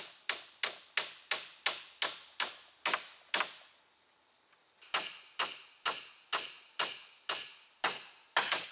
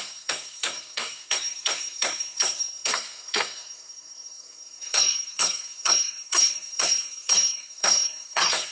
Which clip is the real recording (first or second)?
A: first